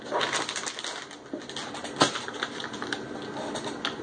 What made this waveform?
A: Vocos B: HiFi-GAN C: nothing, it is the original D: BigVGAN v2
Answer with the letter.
C